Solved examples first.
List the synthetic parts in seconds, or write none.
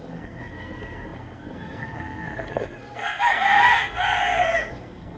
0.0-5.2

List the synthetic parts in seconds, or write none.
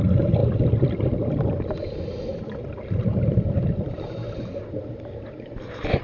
none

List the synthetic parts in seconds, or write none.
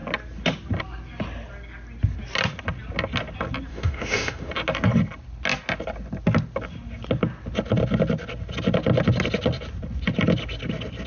3.7-4.5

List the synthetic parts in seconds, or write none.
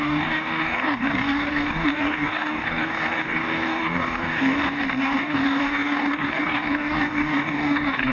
0.0-8.1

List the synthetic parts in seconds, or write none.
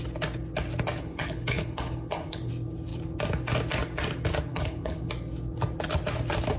1.0-2.5; 4.5-5.1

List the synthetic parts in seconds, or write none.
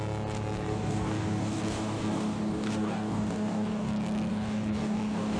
0.7-3.9; 4.3-5.4